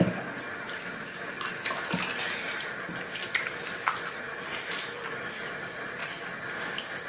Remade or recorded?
recorded